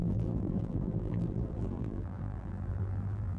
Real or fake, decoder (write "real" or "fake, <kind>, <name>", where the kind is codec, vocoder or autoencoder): fake, vocoder, BigVGAN v2